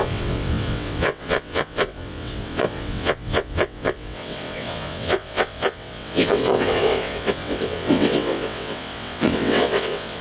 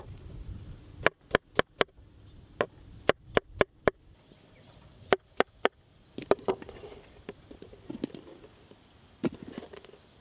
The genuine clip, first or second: second